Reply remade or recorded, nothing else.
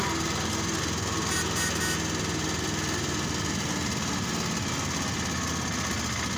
recorded